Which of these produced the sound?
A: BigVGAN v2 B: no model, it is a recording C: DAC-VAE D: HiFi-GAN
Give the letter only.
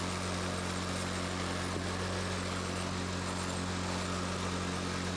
B